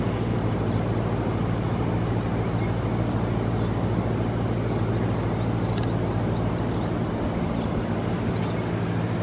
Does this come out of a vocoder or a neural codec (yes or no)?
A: no